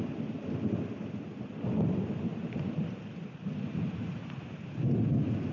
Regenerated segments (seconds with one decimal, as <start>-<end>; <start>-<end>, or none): 2.3-2.8